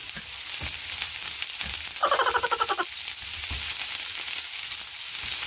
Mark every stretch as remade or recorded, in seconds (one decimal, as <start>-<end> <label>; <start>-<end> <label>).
0.0-5.5 recorded